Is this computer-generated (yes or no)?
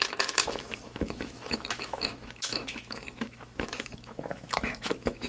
yes